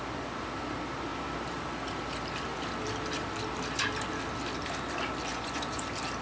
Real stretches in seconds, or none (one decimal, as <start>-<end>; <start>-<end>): 0.0-5.3; 5.8-6.2